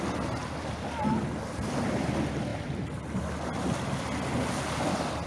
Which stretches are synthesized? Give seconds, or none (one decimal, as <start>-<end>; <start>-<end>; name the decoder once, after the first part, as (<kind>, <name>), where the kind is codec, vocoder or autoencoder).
none